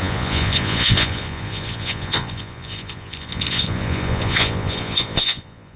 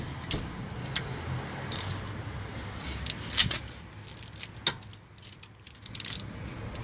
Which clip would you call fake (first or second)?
first